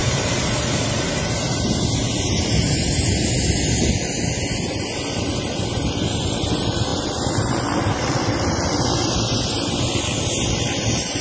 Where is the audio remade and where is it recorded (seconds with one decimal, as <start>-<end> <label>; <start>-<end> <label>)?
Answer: 0.0-3.4 remade; 3.4-11.2 recorded